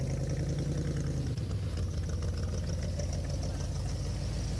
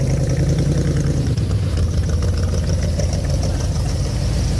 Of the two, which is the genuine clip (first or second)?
first